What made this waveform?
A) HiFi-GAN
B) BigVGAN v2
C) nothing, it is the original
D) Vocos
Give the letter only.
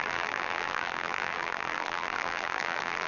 B